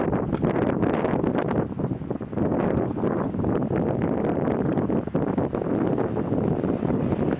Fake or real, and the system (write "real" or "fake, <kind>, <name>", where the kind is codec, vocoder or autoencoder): real